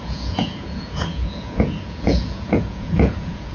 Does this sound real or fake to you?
fake